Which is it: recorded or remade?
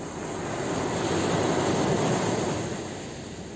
recorded